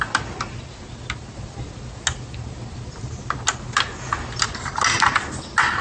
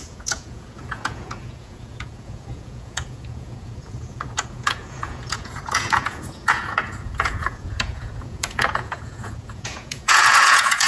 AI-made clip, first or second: second